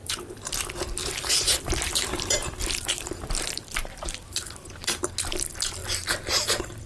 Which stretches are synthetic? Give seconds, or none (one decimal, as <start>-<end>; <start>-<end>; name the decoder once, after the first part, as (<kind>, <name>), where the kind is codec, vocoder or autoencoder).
0.0-0.5 (vocoder, BigVGAN v2); 1.0-5.1